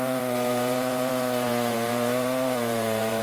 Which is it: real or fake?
fake